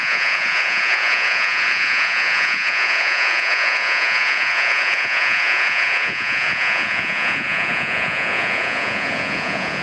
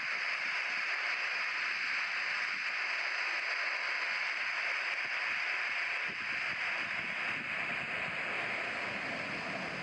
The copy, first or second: first